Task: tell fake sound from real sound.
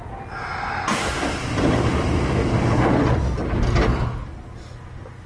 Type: real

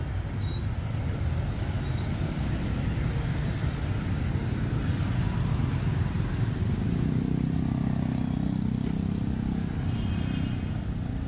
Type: real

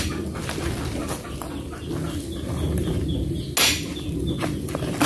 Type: real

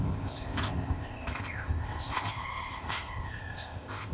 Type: fake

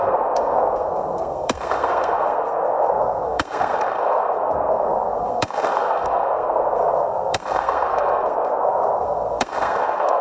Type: fake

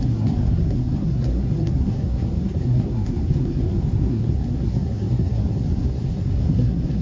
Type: fake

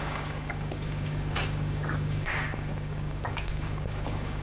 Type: fake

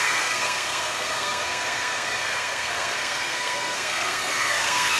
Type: fake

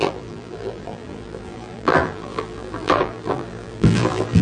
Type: fake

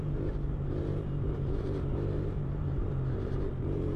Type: fake